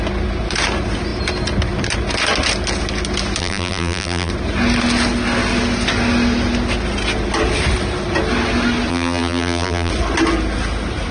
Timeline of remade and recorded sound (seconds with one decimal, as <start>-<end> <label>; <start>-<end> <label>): 0.0-3.4 recorded; 3.4-4.3 remade; 4.3-8.9 recorded; 8.9-9.9 remade; 9.9-11.1 recorded